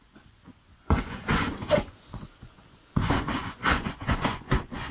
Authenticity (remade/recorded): remade